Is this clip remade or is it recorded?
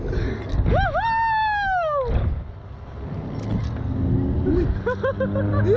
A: recorded